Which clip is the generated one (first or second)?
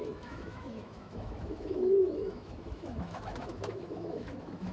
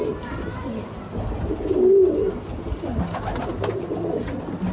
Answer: first